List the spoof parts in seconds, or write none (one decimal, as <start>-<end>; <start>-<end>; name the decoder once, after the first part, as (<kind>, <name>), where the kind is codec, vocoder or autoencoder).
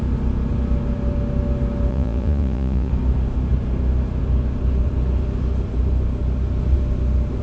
1.9-2.9 (vocoder, Vocos)